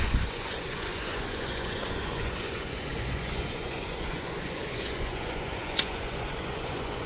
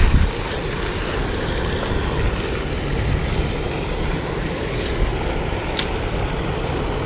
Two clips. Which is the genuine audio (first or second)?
second